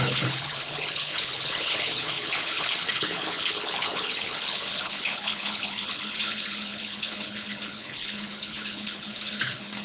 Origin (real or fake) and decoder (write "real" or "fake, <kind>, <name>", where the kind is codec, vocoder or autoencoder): fake, codec, HILCodec